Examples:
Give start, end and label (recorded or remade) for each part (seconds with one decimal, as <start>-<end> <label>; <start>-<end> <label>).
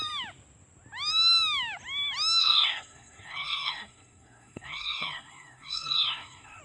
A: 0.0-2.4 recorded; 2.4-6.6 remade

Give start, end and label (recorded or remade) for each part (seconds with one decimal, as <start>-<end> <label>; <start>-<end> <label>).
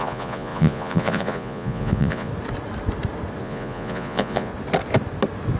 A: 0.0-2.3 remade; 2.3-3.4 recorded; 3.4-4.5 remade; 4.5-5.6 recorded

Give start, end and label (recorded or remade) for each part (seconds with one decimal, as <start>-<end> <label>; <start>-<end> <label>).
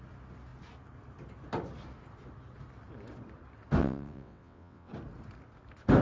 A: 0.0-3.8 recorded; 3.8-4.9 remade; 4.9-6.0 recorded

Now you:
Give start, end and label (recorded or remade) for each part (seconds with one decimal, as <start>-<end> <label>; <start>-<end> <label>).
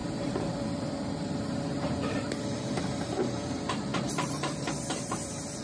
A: 0.0-5.6 remade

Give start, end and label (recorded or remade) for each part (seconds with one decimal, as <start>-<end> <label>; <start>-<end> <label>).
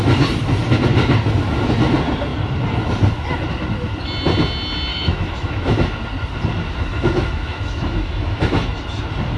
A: 0.0-4.9 recorded; 4.9-6.0 remade; 6.0-6.9 recorded; 6.9-8.8 remade; 8.8-9.4 recorded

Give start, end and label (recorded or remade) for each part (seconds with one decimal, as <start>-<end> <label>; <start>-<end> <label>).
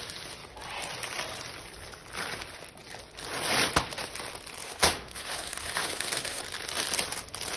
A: 0.0-4.6 recorded; 4.6-6.4 remade; 6.4-7.6 recorded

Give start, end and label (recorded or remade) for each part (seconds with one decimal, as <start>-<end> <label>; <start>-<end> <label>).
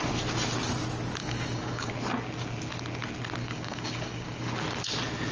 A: 0.0-1.2 recorded; 1.2-1.9 remade; 1.9-3.4 recorded; 3.4-4.5 remade; 4.5-5.3 recorded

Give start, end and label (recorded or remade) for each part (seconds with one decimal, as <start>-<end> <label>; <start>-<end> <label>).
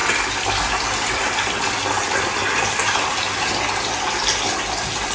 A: 0.0-5.1 recorded